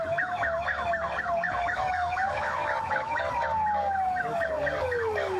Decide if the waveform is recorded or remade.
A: remade